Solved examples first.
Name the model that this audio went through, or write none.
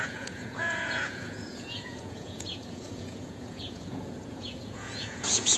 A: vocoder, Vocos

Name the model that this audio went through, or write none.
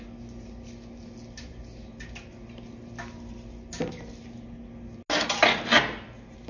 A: none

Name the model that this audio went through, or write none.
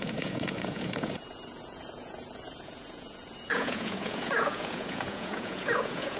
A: vocoder, Vocos